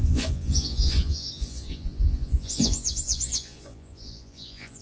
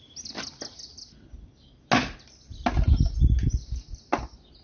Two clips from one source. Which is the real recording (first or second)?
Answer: second